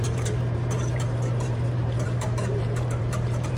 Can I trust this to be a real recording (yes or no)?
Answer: no